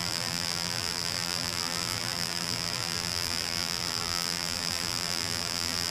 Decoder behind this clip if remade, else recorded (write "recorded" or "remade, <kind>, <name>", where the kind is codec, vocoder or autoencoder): remade, vocoder, BigVGAN v2